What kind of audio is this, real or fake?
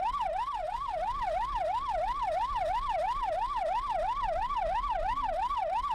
real